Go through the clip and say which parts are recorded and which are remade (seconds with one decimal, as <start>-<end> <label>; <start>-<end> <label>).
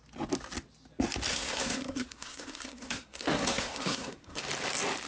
0.0-1.3 recorded; 1.3-4.4 remade; 4.4-5.1 recorded